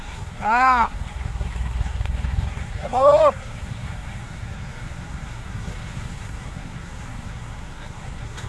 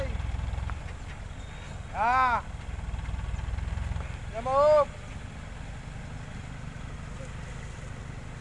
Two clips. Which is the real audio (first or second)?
second